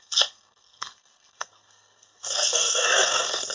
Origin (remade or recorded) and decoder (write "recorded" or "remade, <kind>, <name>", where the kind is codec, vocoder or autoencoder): remade, codec, SNAC